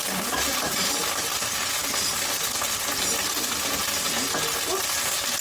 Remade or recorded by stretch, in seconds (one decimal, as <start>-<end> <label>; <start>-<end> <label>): 0.0-0.9 remade; 0.9-5.4 recorded